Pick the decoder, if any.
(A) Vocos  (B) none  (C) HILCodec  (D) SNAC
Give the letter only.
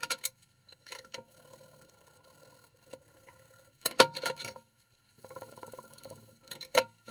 D